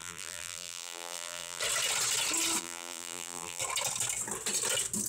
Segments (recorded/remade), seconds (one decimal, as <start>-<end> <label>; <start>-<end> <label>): 0.0-1.6 remade; 1.6-2.6 recorded; 2.6-3.6 remade; 3.6-5.1 recorded